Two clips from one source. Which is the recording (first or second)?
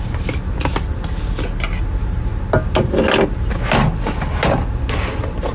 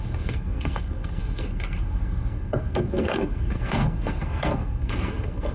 first